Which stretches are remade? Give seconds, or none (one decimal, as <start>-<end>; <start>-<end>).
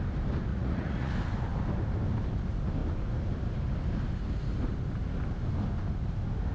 0.5-1.1